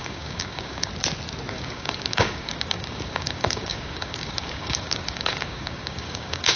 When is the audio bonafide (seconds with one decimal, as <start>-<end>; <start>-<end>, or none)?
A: 0.9-1.5